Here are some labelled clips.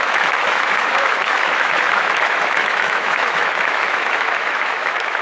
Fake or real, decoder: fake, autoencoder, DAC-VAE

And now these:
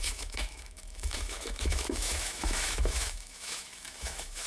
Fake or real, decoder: fake, autoencoder, DAC-VAE